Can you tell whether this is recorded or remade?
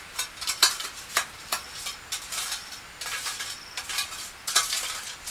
remade